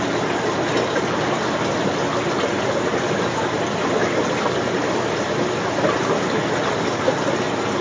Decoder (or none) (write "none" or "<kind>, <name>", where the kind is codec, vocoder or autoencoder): none